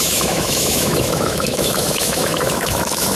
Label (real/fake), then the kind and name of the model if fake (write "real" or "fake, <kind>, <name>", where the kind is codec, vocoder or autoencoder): fake, autoencoder, DAC-VAE